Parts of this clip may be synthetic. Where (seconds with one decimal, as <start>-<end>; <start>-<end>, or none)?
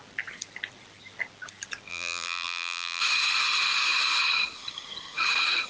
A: 1.9-3.0